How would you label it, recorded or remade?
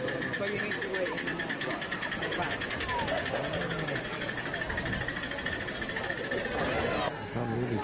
recorded